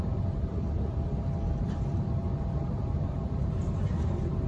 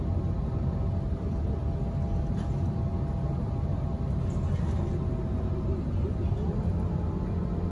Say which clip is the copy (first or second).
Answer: first